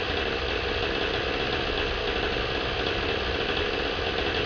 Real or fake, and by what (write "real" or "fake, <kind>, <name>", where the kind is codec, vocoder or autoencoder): real